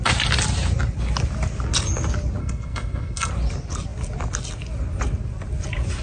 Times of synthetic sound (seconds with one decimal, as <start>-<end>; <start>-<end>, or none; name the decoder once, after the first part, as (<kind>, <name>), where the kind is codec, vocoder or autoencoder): 2.4-3.3 (codec, SNAC)